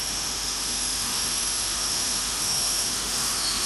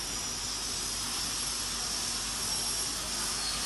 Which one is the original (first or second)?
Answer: second